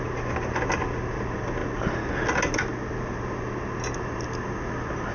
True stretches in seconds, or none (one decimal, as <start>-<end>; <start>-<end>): 0.0-5.1